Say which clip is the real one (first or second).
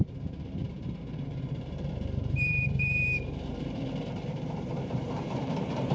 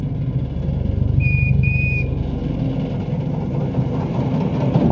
second